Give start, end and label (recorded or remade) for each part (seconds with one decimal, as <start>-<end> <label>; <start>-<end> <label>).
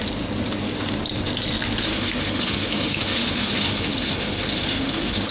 0.0-1.8 recorded; 1.8-5.3 remade